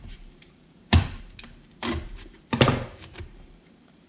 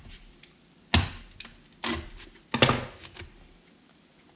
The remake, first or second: first